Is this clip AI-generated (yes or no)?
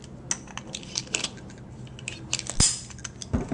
no